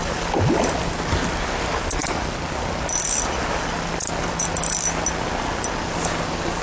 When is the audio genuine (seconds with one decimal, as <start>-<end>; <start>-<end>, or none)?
0.0-6.6